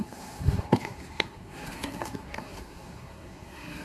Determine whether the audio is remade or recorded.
remade